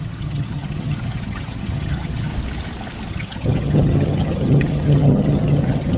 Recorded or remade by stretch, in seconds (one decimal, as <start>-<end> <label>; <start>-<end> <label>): 0.0-2.3 remade; 2.3-3.1 recorded; 3.1-6.0 remade